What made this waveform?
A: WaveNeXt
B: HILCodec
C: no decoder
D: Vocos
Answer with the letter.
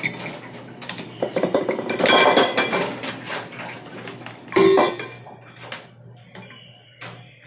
C